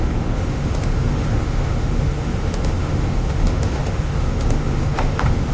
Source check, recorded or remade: remade